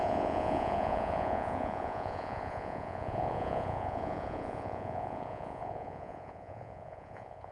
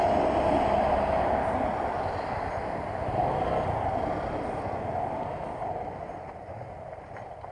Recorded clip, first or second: second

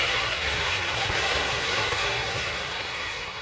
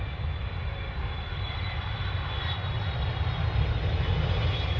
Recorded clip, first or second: second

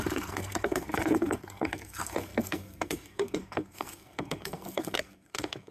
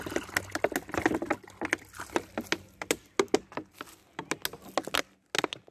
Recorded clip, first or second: second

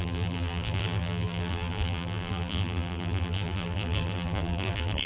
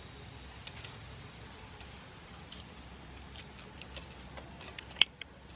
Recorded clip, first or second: second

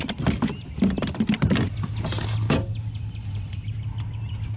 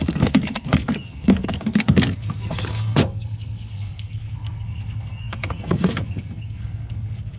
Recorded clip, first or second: first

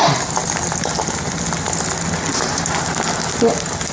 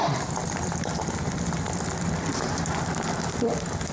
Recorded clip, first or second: first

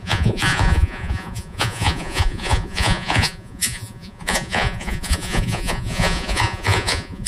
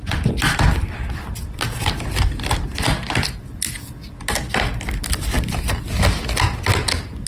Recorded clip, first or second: second